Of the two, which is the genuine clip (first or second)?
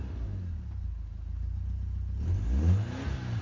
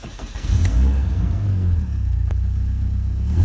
first